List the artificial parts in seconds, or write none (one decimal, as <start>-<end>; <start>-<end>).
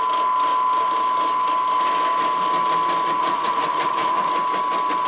3.2-4.3